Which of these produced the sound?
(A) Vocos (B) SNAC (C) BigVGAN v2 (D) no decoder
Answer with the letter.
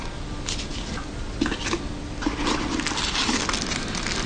D